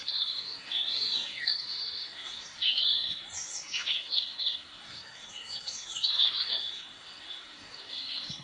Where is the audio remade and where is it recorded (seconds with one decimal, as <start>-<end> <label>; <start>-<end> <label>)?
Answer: 0.0-8.4 remade